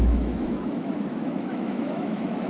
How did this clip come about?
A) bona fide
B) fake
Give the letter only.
B